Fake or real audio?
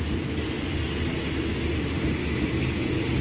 real